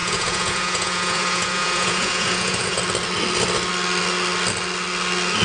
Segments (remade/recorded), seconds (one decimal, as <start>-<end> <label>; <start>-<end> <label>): 0.0-2.8 remade; 2.8-5.4 recorded